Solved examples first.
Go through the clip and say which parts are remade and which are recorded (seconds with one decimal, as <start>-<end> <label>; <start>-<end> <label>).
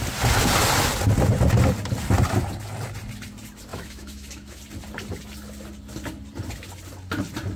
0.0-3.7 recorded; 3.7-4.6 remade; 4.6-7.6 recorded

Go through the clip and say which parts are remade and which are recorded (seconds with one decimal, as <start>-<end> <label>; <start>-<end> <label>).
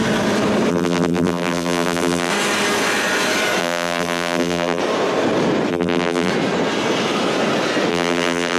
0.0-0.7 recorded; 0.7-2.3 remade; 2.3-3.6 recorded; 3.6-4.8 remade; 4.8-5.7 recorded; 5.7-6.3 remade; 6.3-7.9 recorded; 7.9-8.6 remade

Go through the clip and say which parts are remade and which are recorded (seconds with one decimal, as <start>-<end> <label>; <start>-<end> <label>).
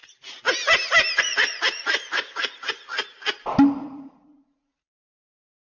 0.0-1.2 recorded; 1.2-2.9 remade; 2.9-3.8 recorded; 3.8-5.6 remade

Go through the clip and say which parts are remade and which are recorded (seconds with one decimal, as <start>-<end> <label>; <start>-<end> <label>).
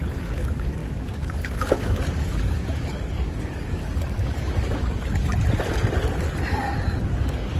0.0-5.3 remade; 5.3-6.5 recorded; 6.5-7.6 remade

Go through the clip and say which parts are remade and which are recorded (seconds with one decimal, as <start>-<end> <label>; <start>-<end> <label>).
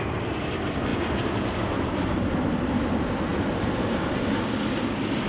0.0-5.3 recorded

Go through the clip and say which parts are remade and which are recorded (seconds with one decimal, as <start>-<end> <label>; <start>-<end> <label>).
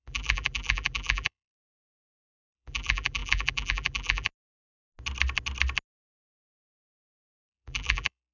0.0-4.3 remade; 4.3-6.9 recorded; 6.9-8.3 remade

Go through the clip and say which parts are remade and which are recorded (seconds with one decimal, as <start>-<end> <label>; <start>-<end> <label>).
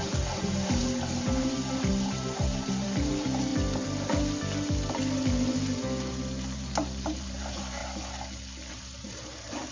0.0-3.5 remade; 3.5-6.1 recorded; 6.1-7.8 remade; 7.8-8.7 recorded; 8.7-9.7 remade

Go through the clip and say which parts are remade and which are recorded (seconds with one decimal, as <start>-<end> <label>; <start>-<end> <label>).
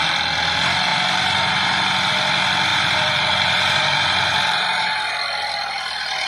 0.0-0.9 recorded; 0.9-2.1 remade; 2.1-2.7 recorded; 2.7-5.1 remade; 5.1-6.3 recorded